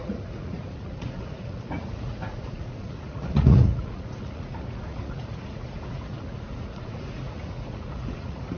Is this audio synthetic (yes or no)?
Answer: yes